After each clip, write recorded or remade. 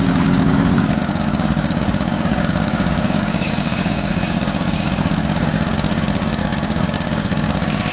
remade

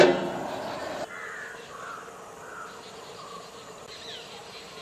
recorded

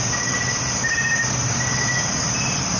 recorded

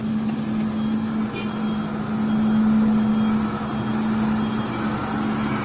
recorded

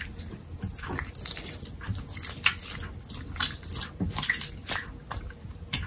recorded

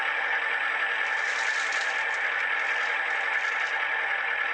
recorded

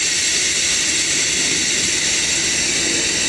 recorded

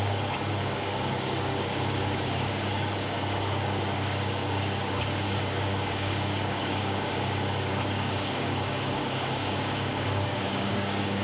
remade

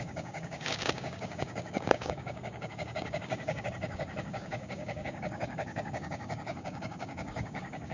remade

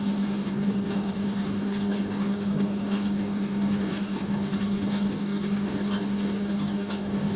remade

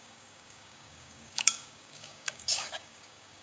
remade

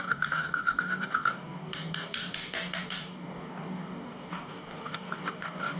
remade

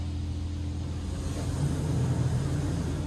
recorded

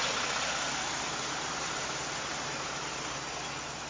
recorded